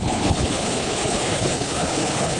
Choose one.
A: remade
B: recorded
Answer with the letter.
A